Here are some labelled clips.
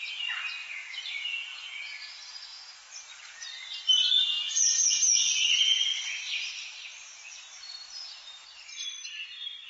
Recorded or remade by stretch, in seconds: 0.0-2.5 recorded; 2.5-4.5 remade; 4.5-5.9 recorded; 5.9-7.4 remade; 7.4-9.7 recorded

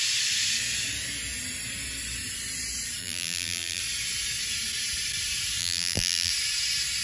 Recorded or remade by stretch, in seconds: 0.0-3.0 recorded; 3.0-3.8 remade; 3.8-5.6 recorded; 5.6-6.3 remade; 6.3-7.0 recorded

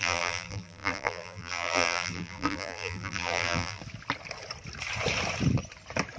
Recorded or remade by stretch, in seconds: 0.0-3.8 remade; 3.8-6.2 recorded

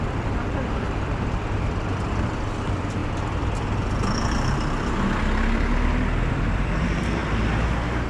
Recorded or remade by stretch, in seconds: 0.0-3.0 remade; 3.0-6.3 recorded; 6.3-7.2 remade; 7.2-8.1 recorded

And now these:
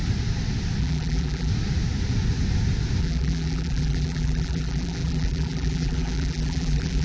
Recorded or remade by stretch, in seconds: 0.0-0.8 recorded; 0.8-1.5 remade; 1.5-3.0 recorded; 3.0-7.0 remade

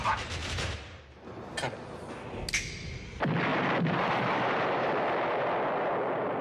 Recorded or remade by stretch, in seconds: 0.0-0.4 recorded; 0.4-1.0 remade; 1.0-3.5 recorded; 3.5-4.9 remade; 4.9-6.4 recorded

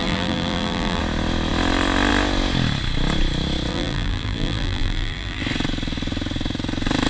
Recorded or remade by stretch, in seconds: 0.0-1.0 remade; 1.0-3.7 recorded; 3.7-5.4 remade; 5.4-7.1 recorded

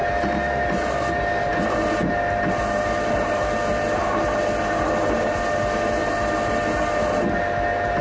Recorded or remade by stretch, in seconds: 0.0-6.0 recorded; 6.0-6.5 remade; 6.5-8.0 recorded